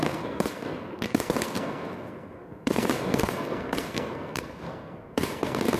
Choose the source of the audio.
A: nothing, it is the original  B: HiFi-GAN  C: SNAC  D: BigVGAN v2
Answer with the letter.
C